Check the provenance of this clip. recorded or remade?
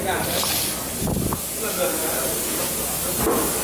recorded